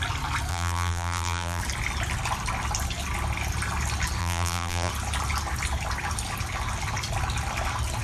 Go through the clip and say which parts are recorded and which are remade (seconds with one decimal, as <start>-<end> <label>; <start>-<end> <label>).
0.0-0.5 recorded; 0.5-1.6 remade; 1.6-4.2 recorded; 4.2-4.9 remade; 4.9-8.0 recorded